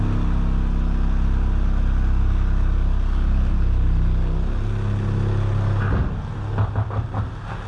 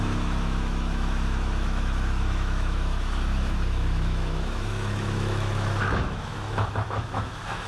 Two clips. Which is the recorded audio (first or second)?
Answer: first